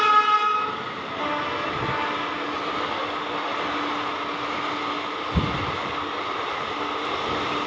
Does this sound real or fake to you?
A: real